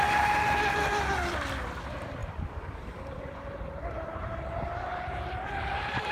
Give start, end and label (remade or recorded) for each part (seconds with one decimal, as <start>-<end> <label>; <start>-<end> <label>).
0.0-2.2 recorded; 2.2-6.1 remade

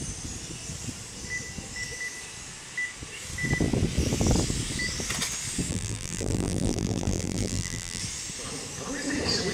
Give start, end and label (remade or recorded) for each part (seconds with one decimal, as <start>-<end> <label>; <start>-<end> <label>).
0.0-5.7 recorded; 5.7-8.0 remade; 8.0-9.5 recorded

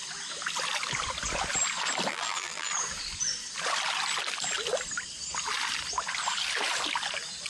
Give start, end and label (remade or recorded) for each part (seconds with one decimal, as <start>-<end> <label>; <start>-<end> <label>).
0.0-2.1 recorded; 2.1-2.7 remade; 2.7-7.5 recorded